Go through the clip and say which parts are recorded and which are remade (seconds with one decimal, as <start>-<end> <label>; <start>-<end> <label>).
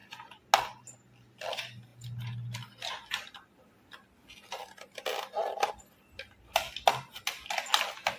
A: 0.0-1.9 recorded; 1.9-5.7 remade; 5.7-8.2 recorded